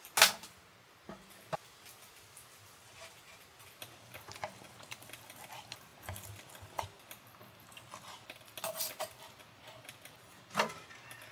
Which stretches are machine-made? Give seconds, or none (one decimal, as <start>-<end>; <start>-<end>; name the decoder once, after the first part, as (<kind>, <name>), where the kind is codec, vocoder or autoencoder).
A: none